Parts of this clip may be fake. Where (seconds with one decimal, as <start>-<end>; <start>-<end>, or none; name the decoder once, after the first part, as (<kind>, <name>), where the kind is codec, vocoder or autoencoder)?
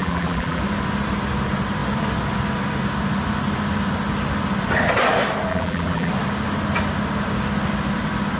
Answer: 0.0-0.6 (vocoder, BigVGAN v2); 5.5-6.1